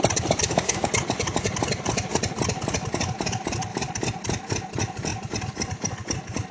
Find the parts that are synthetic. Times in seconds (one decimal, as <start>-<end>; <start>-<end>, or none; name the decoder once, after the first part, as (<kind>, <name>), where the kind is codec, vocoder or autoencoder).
0.4-0.9 (codec, DAC)